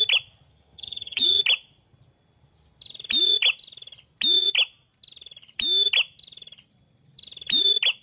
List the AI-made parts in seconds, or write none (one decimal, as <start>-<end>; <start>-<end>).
0.5-1.4